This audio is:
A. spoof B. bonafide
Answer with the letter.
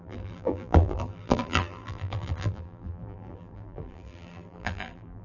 A